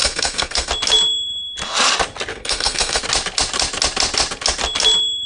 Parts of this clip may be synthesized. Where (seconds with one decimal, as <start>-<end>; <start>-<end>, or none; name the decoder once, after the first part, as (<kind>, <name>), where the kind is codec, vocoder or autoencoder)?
0.0-0.7 (codec, SNAC); 2.3-3.0